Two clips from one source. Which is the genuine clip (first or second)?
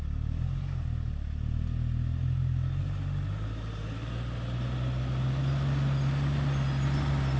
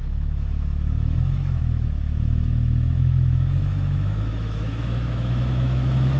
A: first